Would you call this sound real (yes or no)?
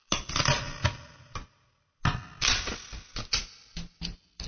yes